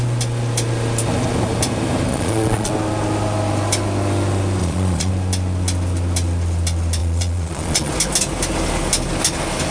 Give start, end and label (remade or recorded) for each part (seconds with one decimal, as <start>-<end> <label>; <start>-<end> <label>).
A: 0.0-2.1 recorded; 2.1-2.7 remade; 2.7-4.6 recorded; 4.6-5.1 remade; 5.1-7.0 recorded; 7.0-7.9 remade; 7.9-9.7 recorded